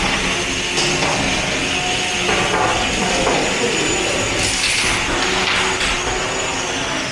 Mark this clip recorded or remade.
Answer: recorded